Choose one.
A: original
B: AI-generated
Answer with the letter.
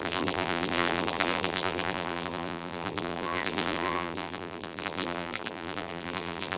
B